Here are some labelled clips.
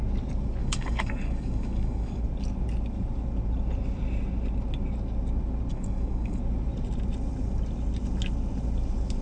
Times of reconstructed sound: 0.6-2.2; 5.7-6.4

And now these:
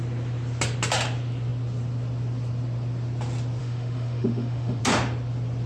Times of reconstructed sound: 3.6-4.8

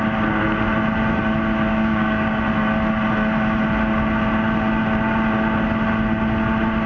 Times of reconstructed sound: 1.7-2.4

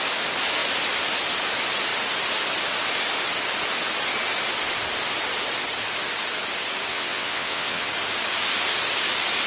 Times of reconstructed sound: 6.9-7.9

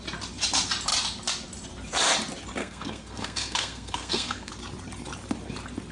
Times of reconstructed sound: 2.6-4.5

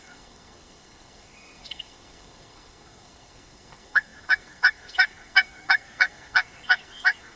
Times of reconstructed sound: 0.0-7.4

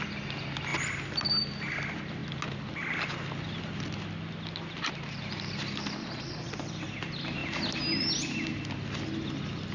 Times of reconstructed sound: 6.0-6.5

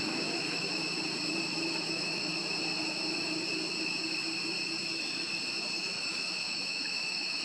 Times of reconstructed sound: 0.0-0.8; 1.9-2.3; 5.8-7.4